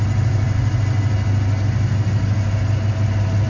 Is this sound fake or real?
real